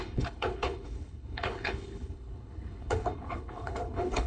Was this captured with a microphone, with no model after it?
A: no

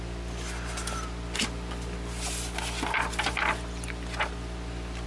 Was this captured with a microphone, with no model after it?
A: yes